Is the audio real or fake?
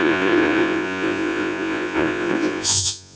fake